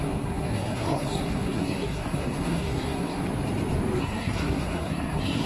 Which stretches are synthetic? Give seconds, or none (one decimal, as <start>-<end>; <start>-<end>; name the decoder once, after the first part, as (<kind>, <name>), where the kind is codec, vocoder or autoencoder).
0.0-3.2 (codec, SNAC); 4.0-5.5